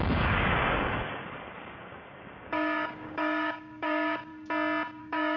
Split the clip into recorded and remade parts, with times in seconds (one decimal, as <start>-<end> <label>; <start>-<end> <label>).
0.0-4.3 remade; 4.3-5.0 recorded; 5.0-5.4 remade